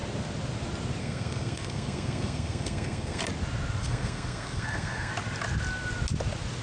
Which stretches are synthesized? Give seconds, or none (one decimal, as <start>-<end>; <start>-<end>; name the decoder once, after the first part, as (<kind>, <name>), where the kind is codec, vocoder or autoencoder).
1.0-3.2 (codec, SNAC); 3.8-5.1